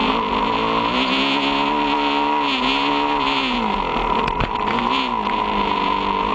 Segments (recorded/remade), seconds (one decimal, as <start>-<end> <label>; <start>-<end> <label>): 0.0-6.3 recorded